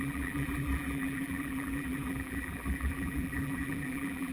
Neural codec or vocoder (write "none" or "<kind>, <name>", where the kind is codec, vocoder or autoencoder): vocoder, BigVGAN v2